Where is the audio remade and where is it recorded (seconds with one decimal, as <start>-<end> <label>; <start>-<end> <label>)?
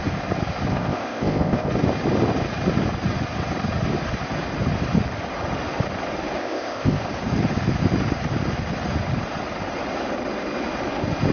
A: 0.0-0.7 recorded; 0.7-1.7 remade; 1.7-6.4 recorded; 6.4-7.0 remade; 7.0-11.3 recorded